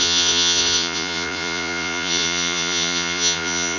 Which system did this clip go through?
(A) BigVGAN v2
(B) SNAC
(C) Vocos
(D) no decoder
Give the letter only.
C